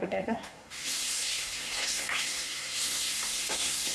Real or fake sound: fake